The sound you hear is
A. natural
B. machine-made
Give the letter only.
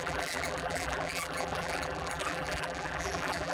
B